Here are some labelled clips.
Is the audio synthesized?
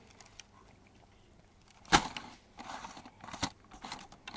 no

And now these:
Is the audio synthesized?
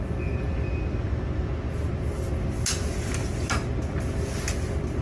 no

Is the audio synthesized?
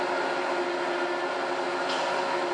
no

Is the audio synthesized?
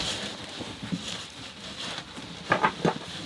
yes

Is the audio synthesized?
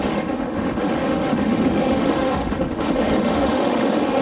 yes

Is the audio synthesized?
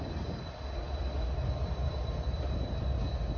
no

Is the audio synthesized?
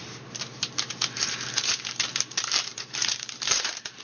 yes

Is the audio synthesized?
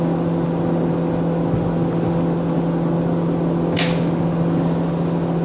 no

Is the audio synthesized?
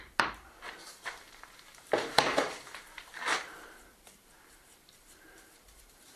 yes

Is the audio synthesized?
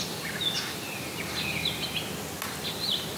no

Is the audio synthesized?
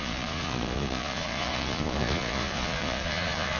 yes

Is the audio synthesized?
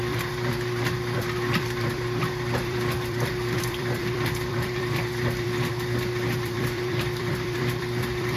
yes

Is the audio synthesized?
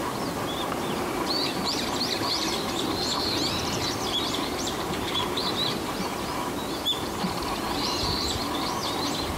yes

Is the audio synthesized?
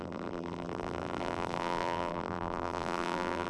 yes